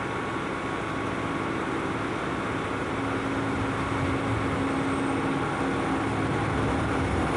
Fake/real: real